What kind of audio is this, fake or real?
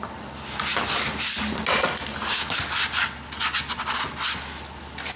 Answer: real